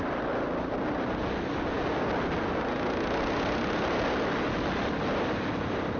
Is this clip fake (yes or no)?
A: no